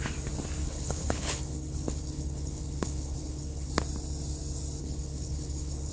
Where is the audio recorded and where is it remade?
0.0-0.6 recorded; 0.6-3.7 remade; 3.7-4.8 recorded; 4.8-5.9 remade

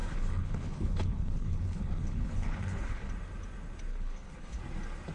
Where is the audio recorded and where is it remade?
0.0-3.1 remade; 3.1-3.9 recorded; 3.9-4.6 remade; 4.6-5.1 recorded

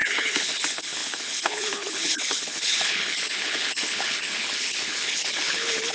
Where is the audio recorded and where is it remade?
0.0-5.9 remade

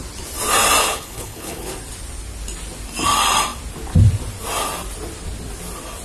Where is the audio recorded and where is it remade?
0.0-0.8 recorded; 0.8-1.7 remade; 1.7-6.0 recorded

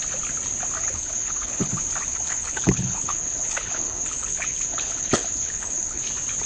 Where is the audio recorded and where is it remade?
0.0-0.8 recorded; 0.8-1.7 remade; 1.7-2.1 recorded; 2.1-6.0 remade; 6.0-6.5 recorded

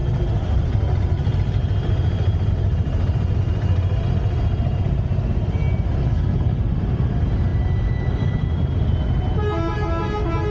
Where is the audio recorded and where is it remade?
0.0-6.0 recorded; 6.0-6.6 remade; 6.6-10.5 recorded

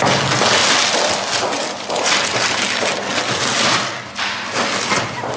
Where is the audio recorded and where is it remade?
0.0-5.4 recorded

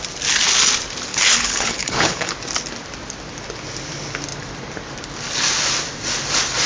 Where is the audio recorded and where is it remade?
0.0-1.1 recorded; 1.1-2.3 remade; 2.3-6.7 recorded